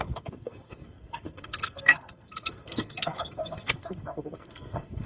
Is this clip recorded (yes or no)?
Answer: no